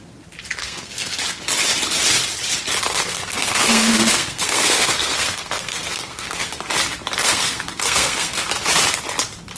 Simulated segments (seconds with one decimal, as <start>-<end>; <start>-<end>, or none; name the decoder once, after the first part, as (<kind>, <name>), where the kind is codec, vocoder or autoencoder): 0.6-1.2 (codec, SNAC); 2.9-6.7; 7.2-8.5